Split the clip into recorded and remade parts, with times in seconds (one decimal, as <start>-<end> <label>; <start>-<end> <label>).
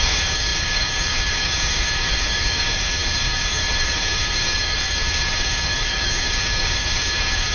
0.0-7.5 remade